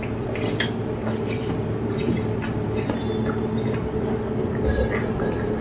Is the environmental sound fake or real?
real